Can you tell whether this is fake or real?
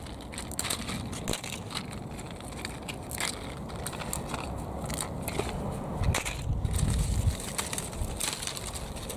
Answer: real